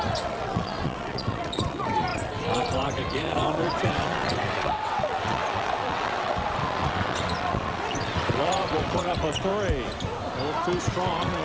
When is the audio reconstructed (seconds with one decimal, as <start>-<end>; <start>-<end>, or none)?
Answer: 0.0-9.5; 10.8-11.4